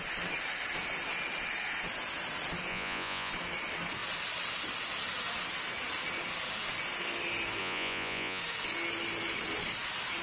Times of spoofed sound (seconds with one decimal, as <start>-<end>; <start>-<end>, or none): 2.7-3.3; 7.6-8.4